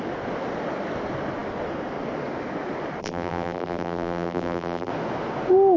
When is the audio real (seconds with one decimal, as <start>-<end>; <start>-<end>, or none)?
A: 0.0-3.0; 4.9-5.8